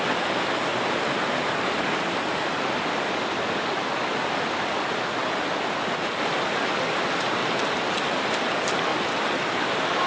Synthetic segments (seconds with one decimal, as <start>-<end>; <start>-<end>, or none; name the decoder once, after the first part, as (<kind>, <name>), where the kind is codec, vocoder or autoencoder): none